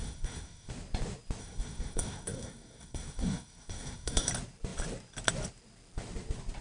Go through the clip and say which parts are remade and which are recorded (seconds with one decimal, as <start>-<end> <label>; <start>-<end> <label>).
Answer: 0.0-0.7 remade; 0.7-1.4 recorded; 1.4-4.3 remade; 4.3-6.6 recorded

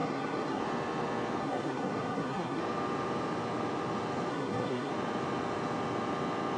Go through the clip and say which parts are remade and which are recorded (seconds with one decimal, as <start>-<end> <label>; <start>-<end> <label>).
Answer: 0.0-0.6 remade; 0.6-1.4 recorded; 1.4-2.6 remade; 2.6-4.3 recorded; 4.3-4.9 remade; 4.9-6.6 recorded

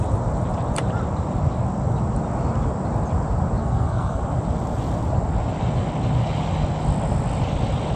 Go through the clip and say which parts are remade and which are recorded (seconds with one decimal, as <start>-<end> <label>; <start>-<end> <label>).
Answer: 0.0-3.6 recorded; 3.6-4.2 remade; 4.2-8.0 recorded